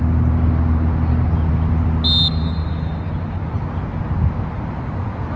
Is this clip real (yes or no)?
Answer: yes